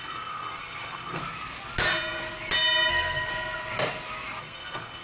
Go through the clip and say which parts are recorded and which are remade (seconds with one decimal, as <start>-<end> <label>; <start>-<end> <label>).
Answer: 0.0-1.2 remade; 1.2-2.9 recorded; 2.9-3.3 remade; 3.3-4.4 recorded; 4.4-5.0 remade